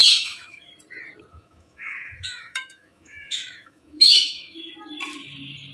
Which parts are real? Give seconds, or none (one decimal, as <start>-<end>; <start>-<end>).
0.7-1.3; 4.7-5.7